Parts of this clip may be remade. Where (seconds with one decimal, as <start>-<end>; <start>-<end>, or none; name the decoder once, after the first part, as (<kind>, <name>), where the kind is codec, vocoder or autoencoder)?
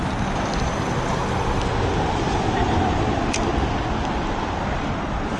0.0-1.2 (vocoder, BigVGAN v2); 2.2-3.5; 4.3-5.4